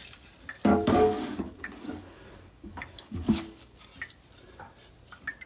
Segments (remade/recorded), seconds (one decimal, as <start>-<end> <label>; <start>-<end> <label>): 0.0-0.7 recorded; 0.7-3.8 remade; 3.8-5.5 recorded